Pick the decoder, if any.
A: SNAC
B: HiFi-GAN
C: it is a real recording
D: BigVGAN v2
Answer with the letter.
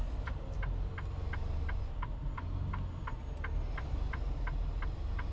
C